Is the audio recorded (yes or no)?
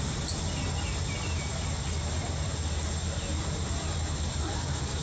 yes